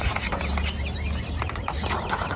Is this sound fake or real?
real